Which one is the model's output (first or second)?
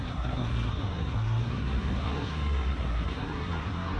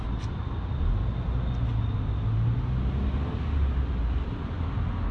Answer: first